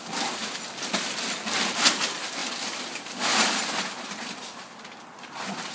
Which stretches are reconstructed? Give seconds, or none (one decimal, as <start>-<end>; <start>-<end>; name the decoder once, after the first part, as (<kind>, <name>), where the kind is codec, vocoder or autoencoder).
none